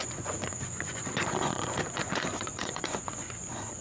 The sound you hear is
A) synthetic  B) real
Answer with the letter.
A